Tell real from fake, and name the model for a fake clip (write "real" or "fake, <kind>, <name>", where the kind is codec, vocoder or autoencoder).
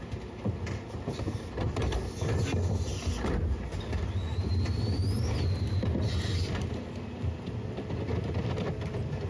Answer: real